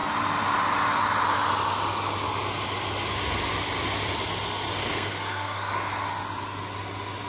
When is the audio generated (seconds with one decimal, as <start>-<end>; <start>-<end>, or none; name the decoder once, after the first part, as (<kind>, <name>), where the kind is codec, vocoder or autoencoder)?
4.8-5.7 (codec, SNAC)